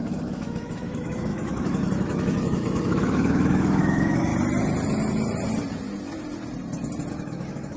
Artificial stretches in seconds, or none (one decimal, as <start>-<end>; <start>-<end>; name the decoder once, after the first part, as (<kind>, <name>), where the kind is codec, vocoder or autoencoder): 0.0-4.3 (autoencoder, DAC-VAE); 7.1-7.8